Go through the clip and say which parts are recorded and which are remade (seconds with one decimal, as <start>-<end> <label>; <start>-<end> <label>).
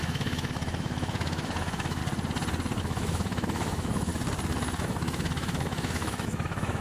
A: 0.0-2.0 remade; 2.0-2.8 recorded; 2.8-4.1 remade; 4.1-4.8 recorded; 4.8-6.8 remade